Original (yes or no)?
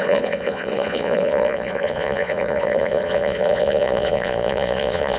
no